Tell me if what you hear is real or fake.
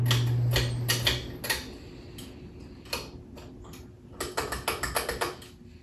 real